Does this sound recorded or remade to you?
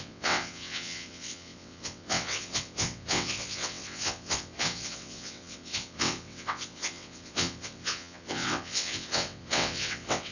remade